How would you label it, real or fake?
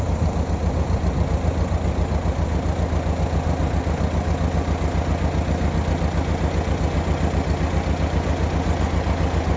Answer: real